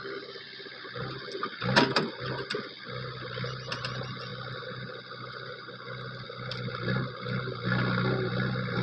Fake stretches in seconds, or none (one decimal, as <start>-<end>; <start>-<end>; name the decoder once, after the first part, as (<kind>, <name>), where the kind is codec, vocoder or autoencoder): none